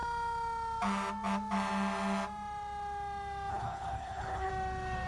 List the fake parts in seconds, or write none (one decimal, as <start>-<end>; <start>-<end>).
3.5-4.5